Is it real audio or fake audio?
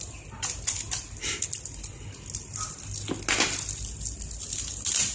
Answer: real